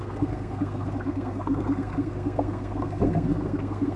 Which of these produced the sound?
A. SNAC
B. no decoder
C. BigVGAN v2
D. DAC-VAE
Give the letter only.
A